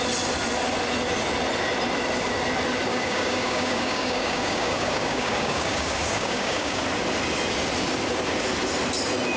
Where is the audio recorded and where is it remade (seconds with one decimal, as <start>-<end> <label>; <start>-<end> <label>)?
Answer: 0.0-2.9 recorded; 2.9-6.8 remade; 6.8-9.4 recorded